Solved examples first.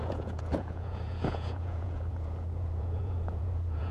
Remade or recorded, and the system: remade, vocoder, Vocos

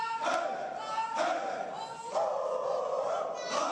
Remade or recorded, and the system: recorded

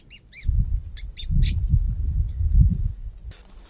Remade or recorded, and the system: recorded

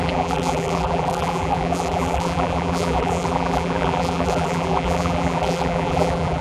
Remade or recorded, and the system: remade, vocoder, BigVGAN v2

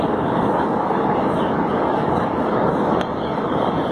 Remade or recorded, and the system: remade, codec, DAC